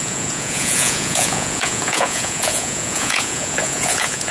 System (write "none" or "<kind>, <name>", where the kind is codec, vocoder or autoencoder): vocoder, Vocos